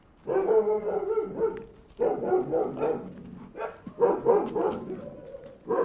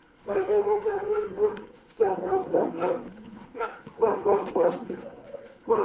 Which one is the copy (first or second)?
second